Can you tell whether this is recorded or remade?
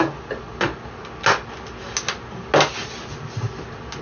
recorded